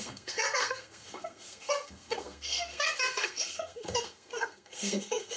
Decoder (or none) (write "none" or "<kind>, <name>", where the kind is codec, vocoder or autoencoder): codec, SNAC